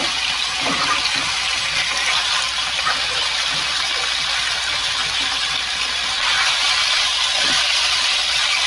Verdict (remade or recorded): recorded